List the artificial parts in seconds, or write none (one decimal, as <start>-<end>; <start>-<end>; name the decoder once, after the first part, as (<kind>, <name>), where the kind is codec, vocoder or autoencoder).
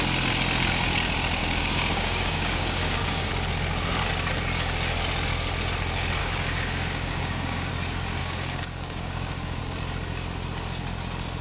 1.4-3.3 (codec, DAC); 6.2-7.7; 8.2-9.6